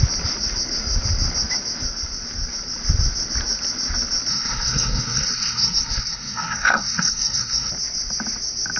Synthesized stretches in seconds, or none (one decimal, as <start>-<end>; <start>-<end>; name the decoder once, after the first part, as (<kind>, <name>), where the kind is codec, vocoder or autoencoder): 4.3-7.7 (codec, SNAC)